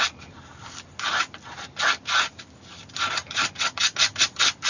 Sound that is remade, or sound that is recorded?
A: recorded